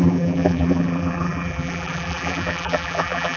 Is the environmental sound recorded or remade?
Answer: remade